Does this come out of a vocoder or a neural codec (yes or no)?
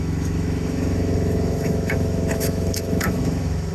yes